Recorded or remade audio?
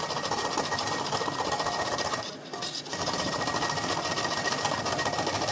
recorded